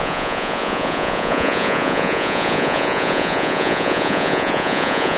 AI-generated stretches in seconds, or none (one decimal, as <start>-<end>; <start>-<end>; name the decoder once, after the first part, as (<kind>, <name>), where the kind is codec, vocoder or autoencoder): 0.0-5.2 (vocoder, Vocos)